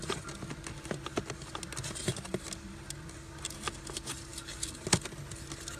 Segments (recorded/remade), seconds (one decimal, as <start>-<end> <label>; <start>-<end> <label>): 0.0-5.8 recorded